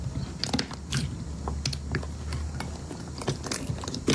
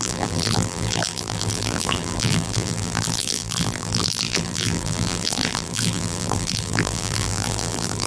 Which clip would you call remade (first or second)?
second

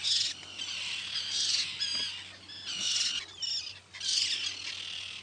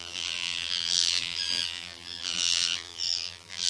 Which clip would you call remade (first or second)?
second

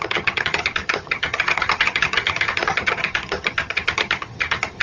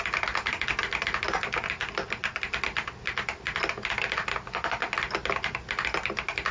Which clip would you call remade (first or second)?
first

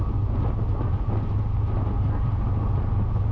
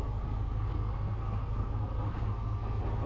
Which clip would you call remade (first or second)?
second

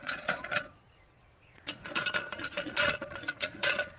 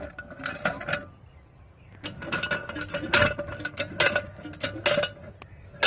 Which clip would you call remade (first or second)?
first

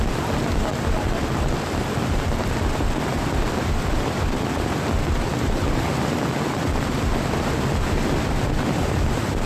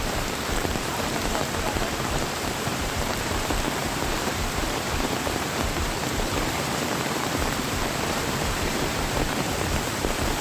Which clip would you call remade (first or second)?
second